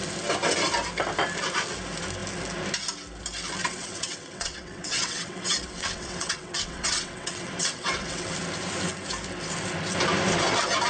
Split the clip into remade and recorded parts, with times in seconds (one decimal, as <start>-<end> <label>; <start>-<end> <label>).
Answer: 0.0-3.6 recorded; 3.6-8.3 remade; 8.3-10.9 recorded